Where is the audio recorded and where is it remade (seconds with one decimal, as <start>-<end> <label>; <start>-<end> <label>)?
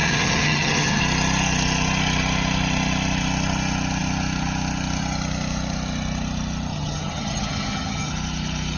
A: 0.0-1.0 remade; 1.0-6.7 recorded; 6.7-8.1 remade; 8.1-8.8 recorded